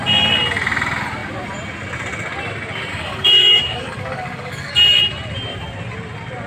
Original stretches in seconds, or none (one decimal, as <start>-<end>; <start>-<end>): 0.0-2.9; 4.7-6.5